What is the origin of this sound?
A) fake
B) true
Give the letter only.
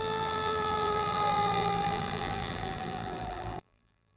A